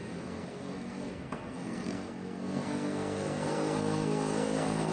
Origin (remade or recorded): remade